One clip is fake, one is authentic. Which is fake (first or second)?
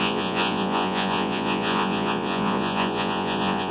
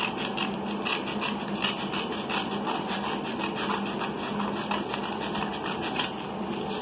first